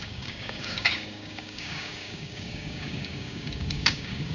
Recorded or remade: remade